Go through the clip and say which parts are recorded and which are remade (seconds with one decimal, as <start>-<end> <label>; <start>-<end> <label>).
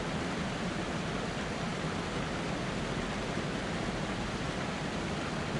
0.0-5.6 recorded